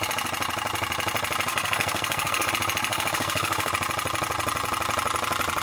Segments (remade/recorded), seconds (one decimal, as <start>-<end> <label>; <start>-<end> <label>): 0.0-1.5 recorded; 1.5-2.5 remade; 2.5-2.9 recorded; 2.9-3.7 remade; 3.7-5.6 recorded